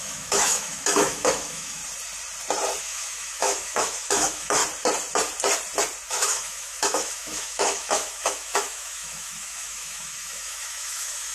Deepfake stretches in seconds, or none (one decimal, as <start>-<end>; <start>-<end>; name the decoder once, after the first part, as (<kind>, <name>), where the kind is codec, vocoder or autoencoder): 0.0-1.8 (autoencoder, DAC-VAE); 2.8-4.6; 6.1-11.3

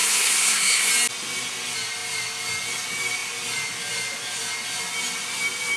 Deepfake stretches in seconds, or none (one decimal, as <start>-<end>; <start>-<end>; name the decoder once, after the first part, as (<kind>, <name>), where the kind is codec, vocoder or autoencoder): 0.0-0.9 (codec, SNAC)

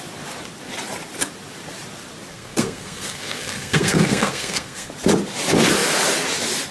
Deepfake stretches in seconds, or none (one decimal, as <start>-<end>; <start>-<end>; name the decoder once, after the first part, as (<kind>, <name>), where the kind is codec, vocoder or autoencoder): 2.3-4.9 (codec, SNAC)

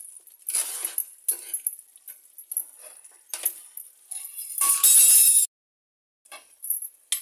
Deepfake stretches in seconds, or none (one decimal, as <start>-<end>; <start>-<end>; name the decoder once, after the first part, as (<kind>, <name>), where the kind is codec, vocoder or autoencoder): none

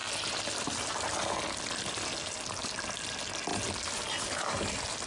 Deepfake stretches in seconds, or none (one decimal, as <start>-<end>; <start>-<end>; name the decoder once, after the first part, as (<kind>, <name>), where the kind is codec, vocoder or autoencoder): none